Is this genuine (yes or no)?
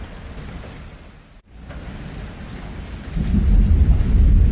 yes